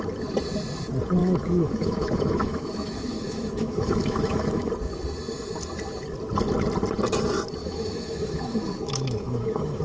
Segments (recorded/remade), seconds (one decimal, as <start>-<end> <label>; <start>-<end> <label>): 0.0-1.2 recorded; 1.2-4.7 remade; 4.7-7.6 recorded; 7.6-9.8 remade